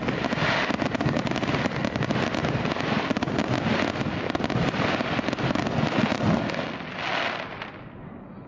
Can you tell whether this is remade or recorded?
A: recorded